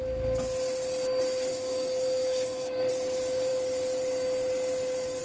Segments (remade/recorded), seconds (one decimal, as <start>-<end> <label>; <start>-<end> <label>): 0.0-1.5 recorded; 1.5-2.9 remade; 2.9-5.2 recorded